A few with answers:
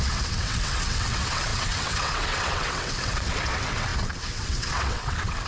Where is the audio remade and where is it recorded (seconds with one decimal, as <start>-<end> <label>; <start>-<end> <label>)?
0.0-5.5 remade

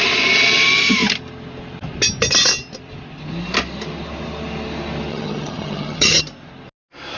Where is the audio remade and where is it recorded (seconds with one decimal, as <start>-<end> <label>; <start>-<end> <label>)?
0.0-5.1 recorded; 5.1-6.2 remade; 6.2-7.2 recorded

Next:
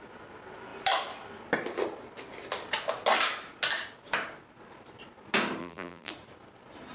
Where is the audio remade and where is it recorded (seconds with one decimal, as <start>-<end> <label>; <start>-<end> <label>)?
0.0-5.6 recorded; 5.6-6.1 remade; 6.1-6.9 recorded

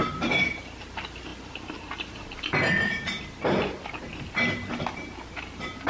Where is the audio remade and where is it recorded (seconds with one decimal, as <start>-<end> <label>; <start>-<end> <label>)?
0.0-5.9 recorded

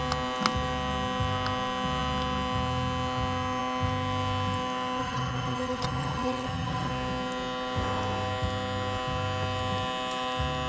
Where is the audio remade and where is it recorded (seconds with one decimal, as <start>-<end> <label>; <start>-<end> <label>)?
0.0-5.0 recorded; 5.0-6.9 remade; 6.9-10.7 recorded

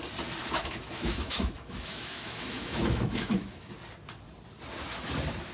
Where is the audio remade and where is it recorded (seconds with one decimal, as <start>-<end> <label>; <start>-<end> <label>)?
0.0-0.4 recorded; 0.4-3.7 remade; 3.7-5.5 recorded

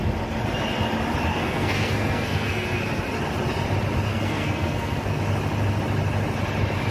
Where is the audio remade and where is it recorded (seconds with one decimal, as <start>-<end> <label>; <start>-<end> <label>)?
0.0-1.3 recorded; 1.3-2.8 remade; 2.8-4.1 recorded; 4.1-5.2 remade; 5.2-6.9 recorded